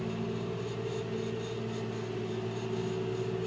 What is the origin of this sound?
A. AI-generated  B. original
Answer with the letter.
B